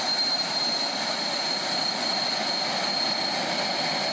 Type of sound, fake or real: real